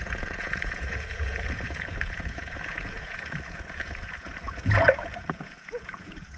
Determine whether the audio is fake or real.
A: fake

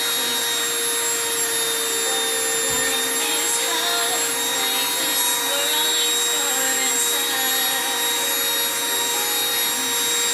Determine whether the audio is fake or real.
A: real